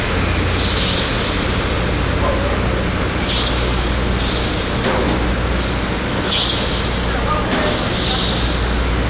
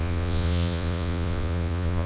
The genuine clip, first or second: first